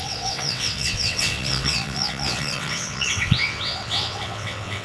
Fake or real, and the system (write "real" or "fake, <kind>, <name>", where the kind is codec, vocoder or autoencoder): fake, vocoder, WaveNeXt